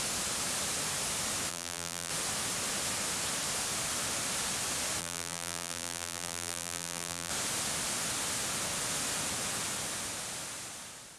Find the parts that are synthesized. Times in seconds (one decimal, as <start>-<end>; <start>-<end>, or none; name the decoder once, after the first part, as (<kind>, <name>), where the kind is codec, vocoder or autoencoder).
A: 1.5-2.1 (vocoder, BigVGAN v2); 5.0-7.3